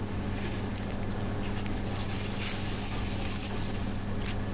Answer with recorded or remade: recorded